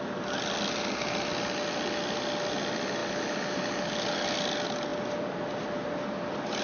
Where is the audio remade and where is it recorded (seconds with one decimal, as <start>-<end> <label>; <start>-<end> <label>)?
0.0-6.6 recorded